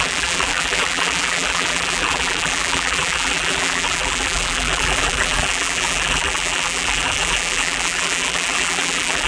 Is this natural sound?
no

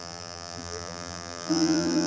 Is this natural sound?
no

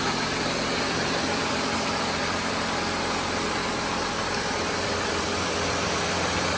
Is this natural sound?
yes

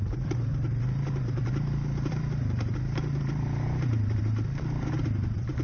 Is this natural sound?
no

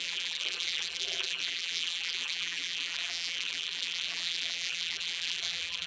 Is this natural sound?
no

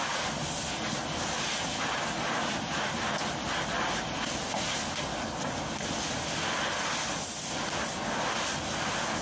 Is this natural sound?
yes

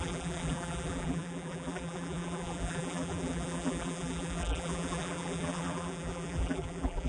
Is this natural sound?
no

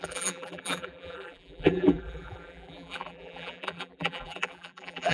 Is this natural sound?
no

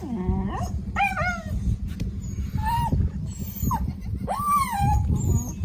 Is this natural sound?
yes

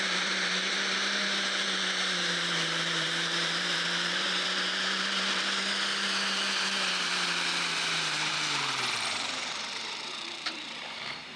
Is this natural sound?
no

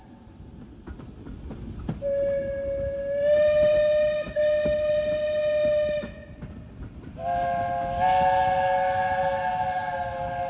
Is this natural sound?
yes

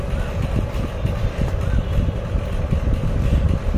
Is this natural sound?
yes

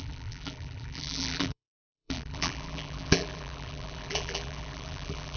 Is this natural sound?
no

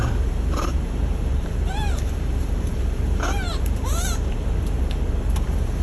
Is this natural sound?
no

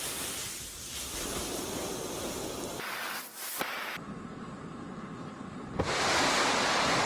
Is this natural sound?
yes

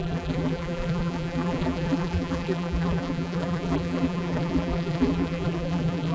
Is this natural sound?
no